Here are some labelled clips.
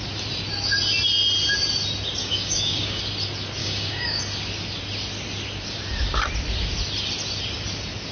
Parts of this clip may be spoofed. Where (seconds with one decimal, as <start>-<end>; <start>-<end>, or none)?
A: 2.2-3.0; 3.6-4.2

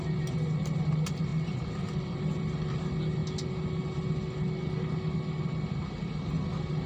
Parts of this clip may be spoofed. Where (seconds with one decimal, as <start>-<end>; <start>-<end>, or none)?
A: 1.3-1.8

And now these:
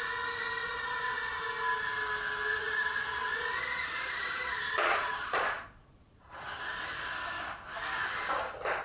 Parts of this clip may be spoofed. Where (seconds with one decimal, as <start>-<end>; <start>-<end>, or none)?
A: 0.6-1.4; 2.6-6.6

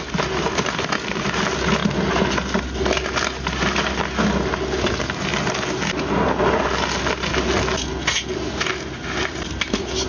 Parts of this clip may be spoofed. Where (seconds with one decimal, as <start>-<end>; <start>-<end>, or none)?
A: none